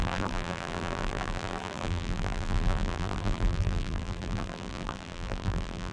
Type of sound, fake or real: fake